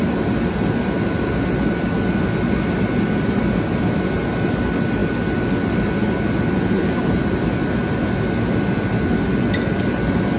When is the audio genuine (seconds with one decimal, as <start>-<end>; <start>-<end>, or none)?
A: 0.0-10.4